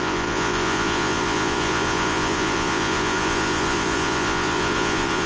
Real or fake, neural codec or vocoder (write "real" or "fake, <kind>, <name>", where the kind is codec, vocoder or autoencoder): fake, vocoder, Vocos